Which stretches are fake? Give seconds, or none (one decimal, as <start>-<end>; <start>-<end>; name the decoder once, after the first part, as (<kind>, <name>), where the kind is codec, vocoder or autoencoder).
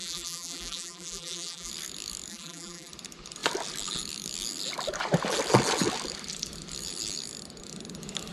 0.0-1.7 (vocoder, BigVGAN v2); 2.3-2.9